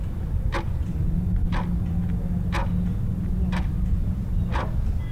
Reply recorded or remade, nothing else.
recorded